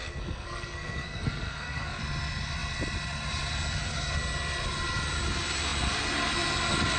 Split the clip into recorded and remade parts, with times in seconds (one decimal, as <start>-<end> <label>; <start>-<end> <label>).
0.0-2.0 remade; 2.0-7.0 recorded